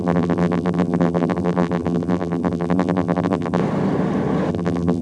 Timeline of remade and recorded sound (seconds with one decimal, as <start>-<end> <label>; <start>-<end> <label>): 0.0-3.6 remade; 3.6-4.5 recorded; 4.5-5.0 remade